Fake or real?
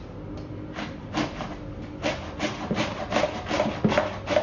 real